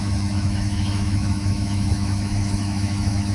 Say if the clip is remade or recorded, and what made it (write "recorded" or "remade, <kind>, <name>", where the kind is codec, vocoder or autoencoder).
remade, autoencoder, DAC-VAE